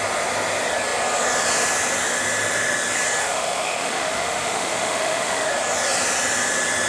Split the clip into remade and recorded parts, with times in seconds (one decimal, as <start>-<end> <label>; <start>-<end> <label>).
0.0-3.2 recorded; 3.2-5.5 remade; 5.5-6.9 recorded